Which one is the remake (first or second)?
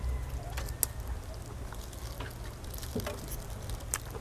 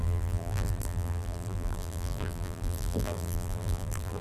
second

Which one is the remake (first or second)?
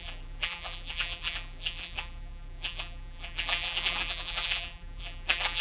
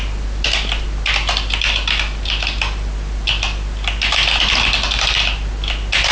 first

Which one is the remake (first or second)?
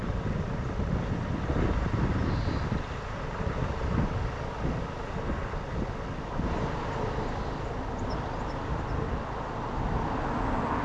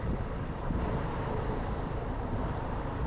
second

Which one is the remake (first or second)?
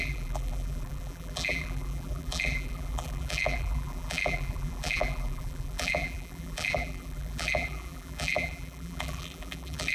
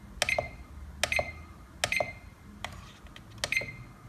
first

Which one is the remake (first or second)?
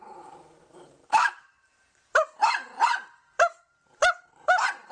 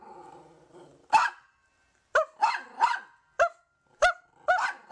first